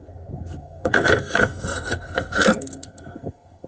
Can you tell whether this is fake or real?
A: fake